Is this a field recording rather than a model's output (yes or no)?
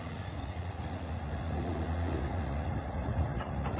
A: no